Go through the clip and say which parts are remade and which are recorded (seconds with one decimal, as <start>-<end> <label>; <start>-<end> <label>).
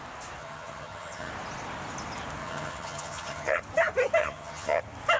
0.0-0.4 recorded; 0.4-1.3 remade; 1.3-2.4 recorded; 2.4-3.6 remade; 3.6-4.2 recorded; 4.2-4.8 remade; 4.8-5.2 recorded